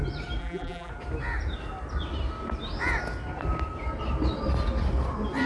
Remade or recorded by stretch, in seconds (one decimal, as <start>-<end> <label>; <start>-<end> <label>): 0.0-0.4 recorded; 0.4-0.9 remade; 0.9-5.5 recorded